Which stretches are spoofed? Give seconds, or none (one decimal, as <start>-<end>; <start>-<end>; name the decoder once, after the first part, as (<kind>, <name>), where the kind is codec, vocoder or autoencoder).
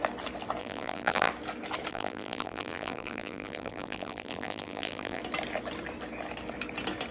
0.6-1.3 (vocoder, BigVGAN v2); 1.9-5.2